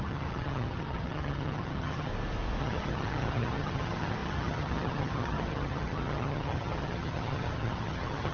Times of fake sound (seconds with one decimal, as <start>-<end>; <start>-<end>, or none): 0.0-2.1; 2.6-8.3